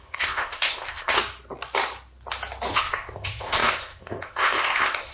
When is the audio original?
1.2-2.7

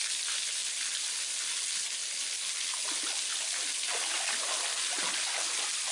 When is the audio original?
0.0-5.9

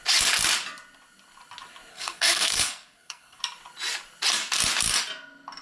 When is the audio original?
0.0-1.9; 3.4-5.6